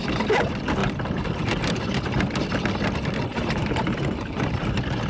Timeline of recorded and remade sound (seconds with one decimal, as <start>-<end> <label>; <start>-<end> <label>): 0.0-0.8 recorded; 0.8-2.0 remade; 2.0-3.3 recorded; 3.3-4.6 remade; 4.6-5.1 recorded